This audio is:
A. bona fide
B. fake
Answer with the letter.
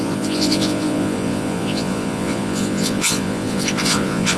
B